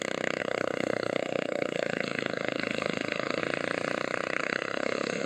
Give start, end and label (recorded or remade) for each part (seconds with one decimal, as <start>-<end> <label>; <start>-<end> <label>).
0.0-0.4 recorded; 0.4-3.4 remade; 3.4-4.4 recorded; 4.4-5.3 remade